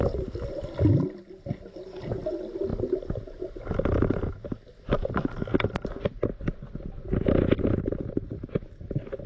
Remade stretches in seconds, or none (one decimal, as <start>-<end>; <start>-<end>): none